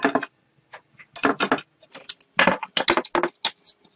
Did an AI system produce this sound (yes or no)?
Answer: no